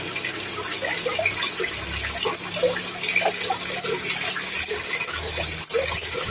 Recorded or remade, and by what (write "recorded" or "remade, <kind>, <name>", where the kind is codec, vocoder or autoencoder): recorded